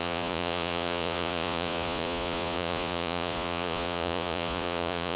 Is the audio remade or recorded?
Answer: remade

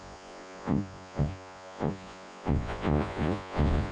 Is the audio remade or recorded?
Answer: remade